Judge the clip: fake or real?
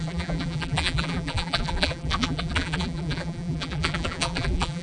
fake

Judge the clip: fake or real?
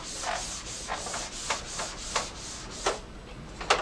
real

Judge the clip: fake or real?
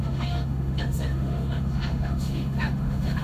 fake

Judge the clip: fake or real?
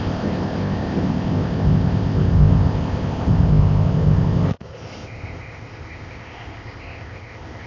fake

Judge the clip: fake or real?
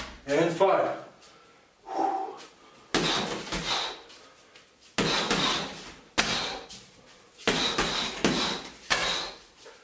real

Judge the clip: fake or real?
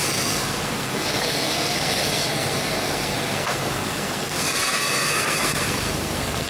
fake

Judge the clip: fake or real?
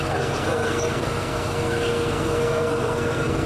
fake